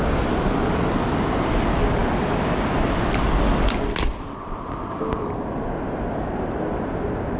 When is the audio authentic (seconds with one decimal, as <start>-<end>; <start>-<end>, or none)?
0.0-7.4